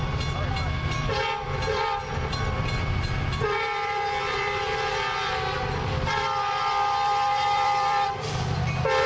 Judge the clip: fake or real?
fake